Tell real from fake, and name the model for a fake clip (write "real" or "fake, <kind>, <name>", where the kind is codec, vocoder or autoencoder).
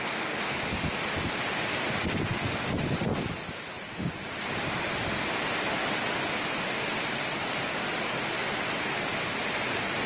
real